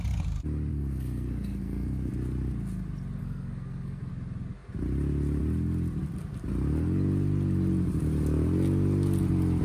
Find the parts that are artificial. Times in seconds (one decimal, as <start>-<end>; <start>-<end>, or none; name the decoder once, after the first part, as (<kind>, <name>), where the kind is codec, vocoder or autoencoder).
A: 0.7-2.1 (codec, SNAC); 3.2-4.1

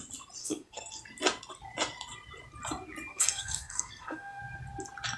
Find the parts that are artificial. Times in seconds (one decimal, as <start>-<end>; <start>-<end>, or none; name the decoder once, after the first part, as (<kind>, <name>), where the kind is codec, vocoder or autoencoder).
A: 0.4-0.9 (codec, SNAC); 3.1-4.4

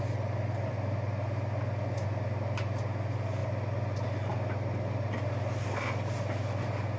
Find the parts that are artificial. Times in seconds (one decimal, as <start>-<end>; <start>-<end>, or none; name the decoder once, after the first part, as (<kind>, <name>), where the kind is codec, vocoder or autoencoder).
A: none

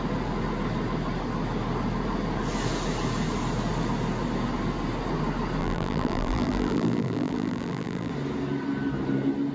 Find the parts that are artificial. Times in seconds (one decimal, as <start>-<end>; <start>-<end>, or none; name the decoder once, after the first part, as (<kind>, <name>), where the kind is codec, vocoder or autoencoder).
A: 5.6-8.1 (vocoder, BigVGAN v2)

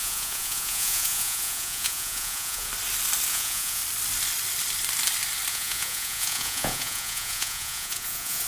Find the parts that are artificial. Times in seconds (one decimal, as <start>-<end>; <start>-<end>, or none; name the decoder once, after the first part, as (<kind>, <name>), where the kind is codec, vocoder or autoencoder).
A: 0.0-2.7 (vocoder, Vocos); 3.3-3.8; 5.5-8.5